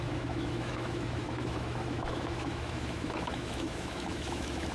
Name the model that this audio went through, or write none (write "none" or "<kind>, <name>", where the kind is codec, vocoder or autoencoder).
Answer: autoencoder, DAC-VAE